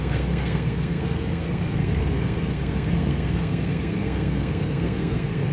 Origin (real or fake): fake